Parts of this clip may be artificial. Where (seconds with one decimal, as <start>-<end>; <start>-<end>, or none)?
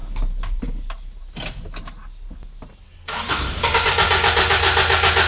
none